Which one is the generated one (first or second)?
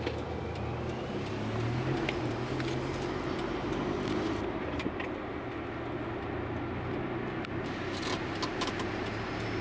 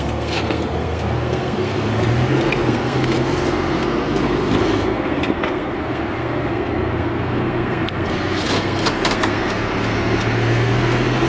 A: second